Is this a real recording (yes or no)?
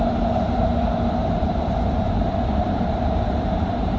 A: no